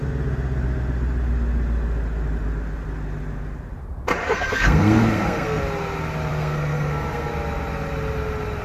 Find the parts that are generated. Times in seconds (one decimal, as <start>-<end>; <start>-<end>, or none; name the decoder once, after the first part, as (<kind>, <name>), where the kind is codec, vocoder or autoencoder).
4.2-5.6 (codec, SNAC); 6.3-7.3

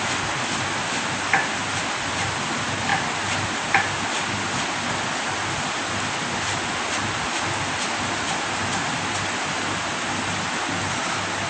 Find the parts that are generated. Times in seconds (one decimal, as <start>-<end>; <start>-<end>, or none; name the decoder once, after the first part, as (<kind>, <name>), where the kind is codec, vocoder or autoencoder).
none

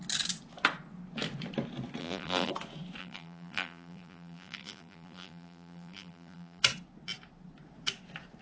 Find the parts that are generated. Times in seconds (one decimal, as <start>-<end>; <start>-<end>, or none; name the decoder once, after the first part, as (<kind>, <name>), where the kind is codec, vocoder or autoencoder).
2.0-2.5 (vocoder, BigVGAN v2); 3.0-6.6

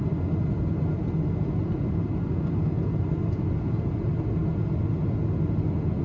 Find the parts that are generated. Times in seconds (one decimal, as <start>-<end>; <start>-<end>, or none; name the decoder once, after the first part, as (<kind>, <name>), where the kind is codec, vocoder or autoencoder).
none

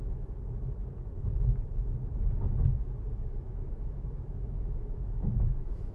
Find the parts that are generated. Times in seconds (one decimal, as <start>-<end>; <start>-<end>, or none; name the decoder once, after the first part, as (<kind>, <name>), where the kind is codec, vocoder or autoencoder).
0.0-1.2 (autoencoder, DAC-VAE); 3.3-5.9

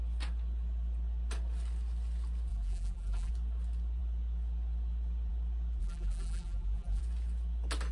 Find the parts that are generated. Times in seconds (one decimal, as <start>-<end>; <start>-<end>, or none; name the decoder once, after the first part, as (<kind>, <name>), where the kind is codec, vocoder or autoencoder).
2.5-3.3 (vocoder, BigVGAN v2); 5.8-7.0

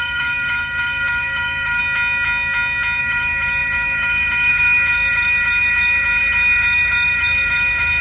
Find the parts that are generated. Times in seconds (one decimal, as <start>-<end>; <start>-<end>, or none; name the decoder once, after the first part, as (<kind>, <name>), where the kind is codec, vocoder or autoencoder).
0.0-1.8 (autoencoder, DAC-VAE); 3.0-8.0